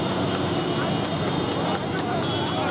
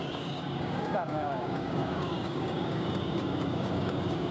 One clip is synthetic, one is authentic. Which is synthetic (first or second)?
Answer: second